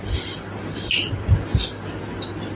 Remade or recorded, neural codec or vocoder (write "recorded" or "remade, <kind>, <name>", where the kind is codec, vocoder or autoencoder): recorded